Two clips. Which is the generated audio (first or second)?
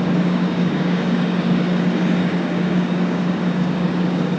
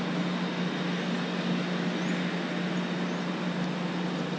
first